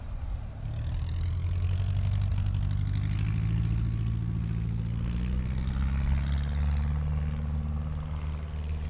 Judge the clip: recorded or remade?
recorded